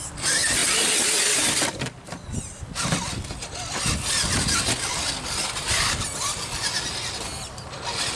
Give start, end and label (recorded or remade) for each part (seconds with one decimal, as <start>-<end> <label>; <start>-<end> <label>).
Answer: 0.0-8.2 recorded